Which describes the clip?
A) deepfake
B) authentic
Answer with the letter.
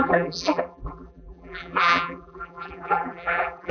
A